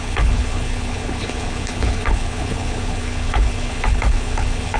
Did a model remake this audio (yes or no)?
yes